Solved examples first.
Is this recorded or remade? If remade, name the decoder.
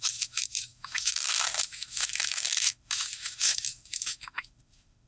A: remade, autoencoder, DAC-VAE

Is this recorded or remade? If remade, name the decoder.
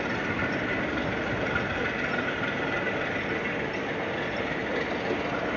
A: recorded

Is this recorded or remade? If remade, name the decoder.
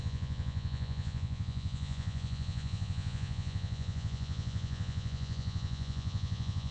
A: remade, vocoder, Vocos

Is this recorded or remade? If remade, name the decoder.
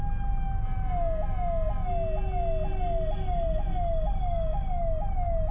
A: recorded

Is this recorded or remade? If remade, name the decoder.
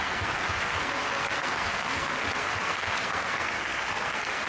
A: remade, codec, SNAC